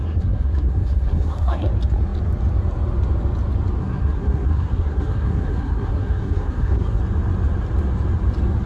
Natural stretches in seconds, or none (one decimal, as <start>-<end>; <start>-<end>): 1.7-3.8; 7.0-8.7